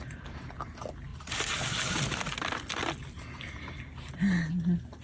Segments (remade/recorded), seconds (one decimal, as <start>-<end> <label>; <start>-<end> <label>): 0.0-5.0 recorded